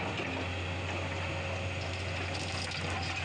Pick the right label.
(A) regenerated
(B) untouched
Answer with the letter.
B